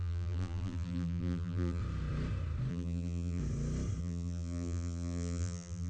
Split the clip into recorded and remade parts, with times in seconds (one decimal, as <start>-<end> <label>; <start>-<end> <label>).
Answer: 0.0-1.8 remade; 1.8-2.7 recorded; 2.7-3.4 remade; 3.4-4.0 recorded; 4.0-5.9 remade